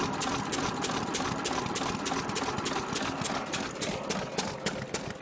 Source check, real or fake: real